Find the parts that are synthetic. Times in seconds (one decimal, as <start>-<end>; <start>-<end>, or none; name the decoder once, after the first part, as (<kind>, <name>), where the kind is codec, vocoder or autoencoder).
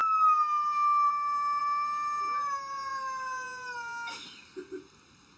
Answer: none